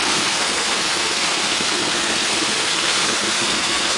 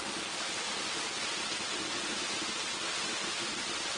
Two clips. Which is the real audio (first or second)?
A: second